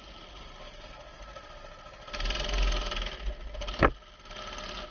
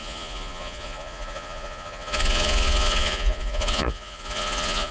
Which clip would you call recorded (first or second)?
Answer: first